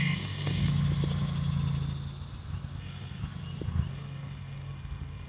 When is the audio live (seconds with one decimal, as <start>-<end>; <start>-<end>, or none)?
0.7-2.8; 3.2-3.9